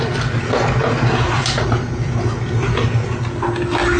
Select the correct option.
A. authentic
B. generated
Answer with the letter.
A